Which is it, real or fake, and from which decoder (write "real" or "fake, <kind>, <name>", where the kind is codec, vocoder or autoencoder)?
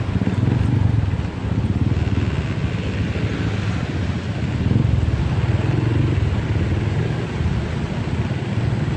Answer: real